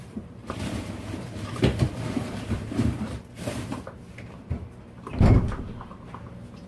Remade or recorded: remade